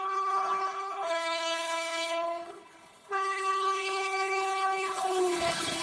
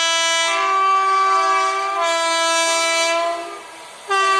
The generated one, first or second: first